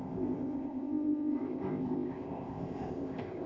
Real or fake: fake